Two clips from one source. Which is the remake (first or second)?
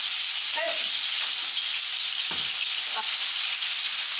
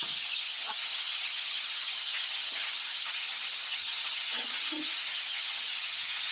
second